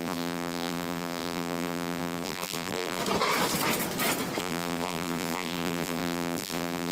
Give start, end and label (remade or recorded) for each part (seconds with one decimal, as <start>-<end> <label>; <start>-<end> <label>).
0.0-3.0 remade; 3.0-4.4 recorded; 4.4-6.9 remade